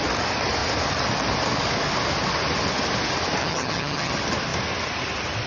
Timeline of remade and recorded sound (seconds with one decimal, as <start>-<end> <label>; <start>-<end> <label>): 0.0-3.4 recorded; 3.4-4.1 remade; 4.1-5.5 recorded